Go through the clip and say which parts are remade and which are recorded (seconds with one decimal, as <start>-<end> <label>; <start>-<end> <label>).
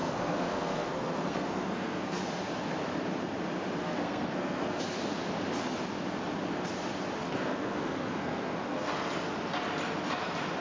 0.0-2.2 remade; 2.2-3.8 recorded; 3.8-4.8 remade; 4.8-7.2 recorded; 7.2-8.9 remade; 8.9-10.6 recorded